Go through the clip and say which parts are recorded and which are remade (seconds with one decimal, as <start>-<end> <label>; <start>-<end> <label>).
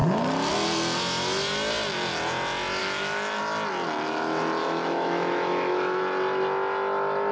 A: 0.0-2.8 recorded; 2.8-3.4 remade; 3.4-4.6 recorded; 4.6-6.0 remade; 6.0-7.3 recorded